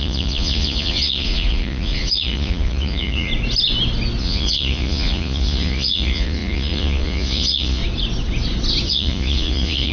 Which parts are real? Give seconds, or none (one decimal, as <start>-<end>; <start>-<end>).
3.3-4.2; 7.8-8.9